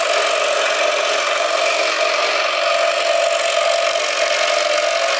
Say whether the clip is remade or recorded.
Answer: recorded